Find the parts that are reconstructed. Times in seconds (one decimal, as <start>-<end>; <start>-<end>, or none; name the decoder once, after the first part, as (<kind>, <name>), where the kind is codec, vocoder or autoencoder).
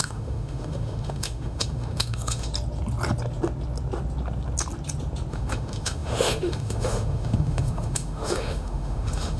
0.0-2.5 (autoencoder, DAC-VAE); 5.3-9.4